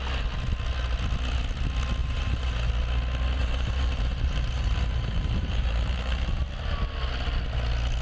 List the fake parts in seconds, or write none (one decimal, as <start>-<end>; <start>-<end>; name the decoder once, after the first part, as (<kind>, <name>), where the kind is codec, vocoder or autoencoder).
2.0-2.7 (vocoder, BigVGAN v2); 3.4-6.4